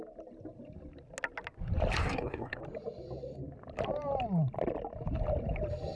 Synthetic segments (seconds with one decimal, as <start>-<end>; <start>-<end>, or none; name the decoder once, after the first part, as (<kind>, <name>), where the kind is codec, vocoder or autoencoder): 2.0-2.6 (codec, SNAC)